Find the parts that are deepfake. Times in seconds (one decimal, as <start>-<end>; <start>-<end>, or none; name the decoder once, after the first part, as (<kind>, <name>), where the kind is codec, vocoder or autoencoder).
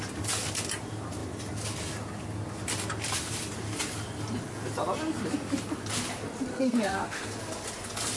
6.5-7.4 (codec, SNAC)